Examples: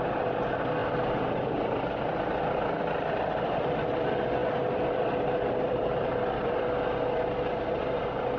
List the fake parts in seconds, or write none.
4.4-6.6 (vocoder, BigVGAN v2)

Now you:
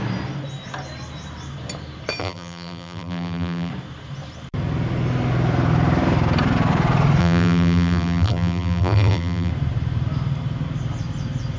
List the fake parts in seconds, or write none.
2.2-3.7 (vocoder, BigVGAN v2); 7.2-9.5

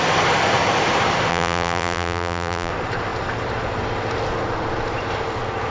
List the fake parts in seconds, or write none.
1.3-2.7 (vocoder, BigVGAN v2)

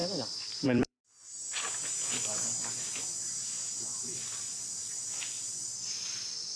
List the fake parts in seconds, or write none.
0.0-1.0 (vocoder, BigVGAN v2); 3.9-4.5

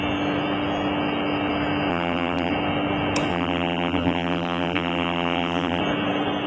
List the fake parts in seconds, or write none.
1.9-2.5 (vocoder, BigVGAN v2); 3.3-5.8

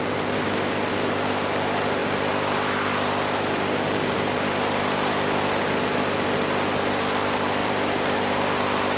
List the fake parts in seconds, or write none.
2.0-5.1 (vocoder, BigVGAN v2); 7.6-8.4